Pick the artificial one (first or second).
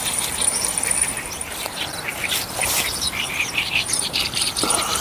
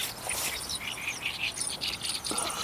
first